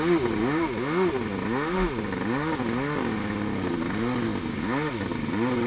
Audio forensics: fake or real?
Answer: real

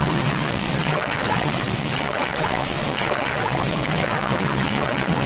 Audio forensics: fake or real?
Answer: fake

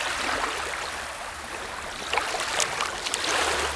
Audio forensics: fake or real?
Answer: real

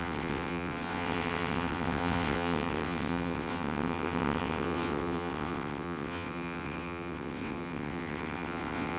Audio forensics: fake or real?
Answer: fake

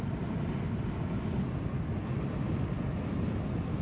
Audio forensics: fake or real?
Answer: real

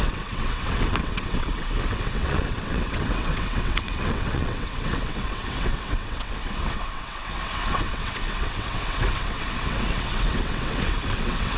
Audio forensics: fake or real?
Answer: fake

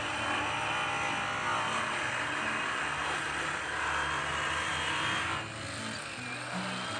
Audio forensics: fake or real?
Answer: real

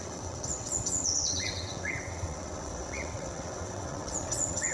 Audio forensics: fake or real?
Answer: fake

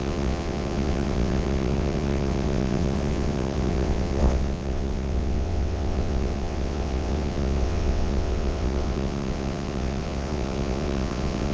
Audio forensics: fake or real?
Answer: fake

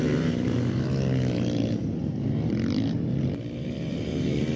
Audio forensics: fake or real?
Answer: real